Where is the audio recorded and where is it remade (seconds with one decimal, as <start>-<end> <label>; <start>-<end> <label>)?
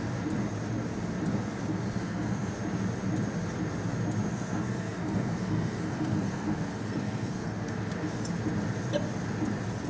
0.0-2.0 recorded; 2.0-2.5 remade; 2.5-4.3 recorded; 4.3-8.2 remade; 8.2-9.9 recorded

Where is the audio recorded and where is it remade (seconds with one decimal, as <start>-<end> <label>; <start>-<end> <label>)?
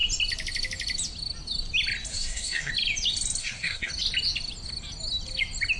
0.0-2.1 recorded; 2.1-2.7 remade; 2.7-3.4 recorded; 3.4-3.9 remade; 3.9-5.8 recorded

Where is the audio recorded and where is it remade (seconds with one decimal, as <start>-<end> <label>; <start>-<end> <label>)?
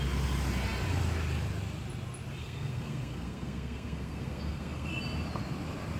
0.0-2.4 recorded; 2.4-4.9 remade; 4.9-6.0 recorded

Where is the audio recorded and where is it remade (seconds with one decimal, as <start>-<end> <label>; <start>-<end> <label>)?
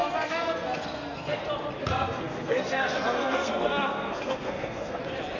0.0-1.4 remade; 1.4-1.8 recorded; 1.8-5.0 remade; 5.0-5.4 recorded